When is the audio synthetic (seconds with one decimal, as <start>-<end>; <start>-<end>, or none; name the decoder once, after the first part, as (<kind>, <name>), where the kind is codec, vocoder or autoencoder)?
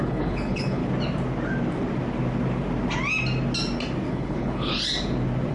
0.0-0.8 (codec, HILCodec); 4.1-4.7